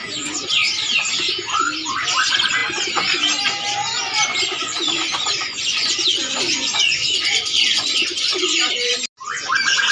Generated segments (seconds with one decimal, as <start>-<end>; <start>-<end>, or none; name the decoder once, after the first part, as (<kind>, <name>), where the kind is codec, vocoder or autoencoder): 0.0-0.5 (vocoder, Vocos); 4.3-8.7